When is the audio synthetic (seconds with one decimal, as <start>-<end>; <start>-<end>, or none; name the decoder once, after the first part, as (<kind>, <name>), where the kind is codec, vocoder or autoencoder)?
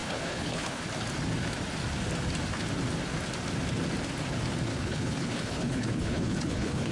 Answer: 0.0-0.8 (codec, HILCodec); 4.7-6.9